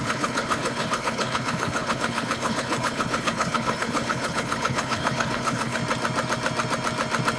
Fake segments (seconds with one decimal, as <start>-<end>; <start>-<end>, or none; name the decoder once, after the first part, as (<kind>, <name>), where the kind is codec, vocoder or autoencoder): 0.0-5.8 (codec, HILCodec)